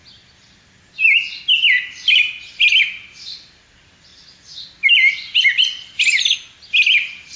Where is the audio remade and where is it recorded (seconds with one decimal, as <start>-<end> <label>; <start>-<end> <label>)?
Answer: 0.0-7.4 recorded